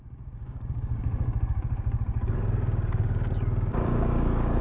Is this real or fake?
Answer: fake